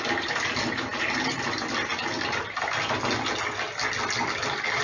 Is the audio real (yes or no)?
yes